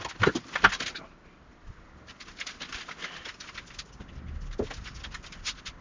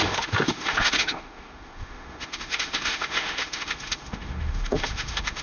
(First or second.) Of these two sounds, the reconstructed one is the second